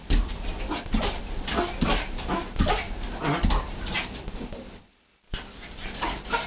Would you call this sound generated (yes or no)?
no